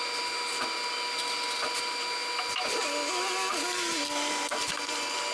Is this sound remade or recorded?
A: recorded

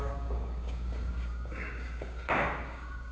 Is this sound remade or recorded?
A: remade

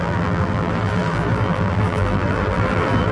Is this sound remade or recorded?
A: remade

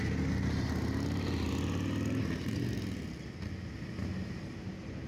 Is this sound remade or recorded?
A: recorded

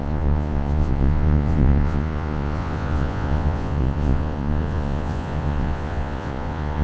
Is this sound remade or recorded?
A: remade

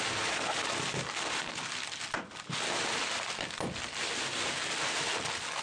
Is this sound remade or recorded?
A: recorded